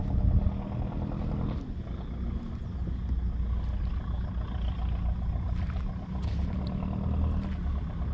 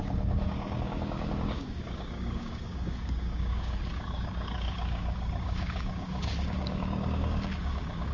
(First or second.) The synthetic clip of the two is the second